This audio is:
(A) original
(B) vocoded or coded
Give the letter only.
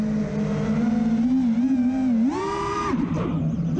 A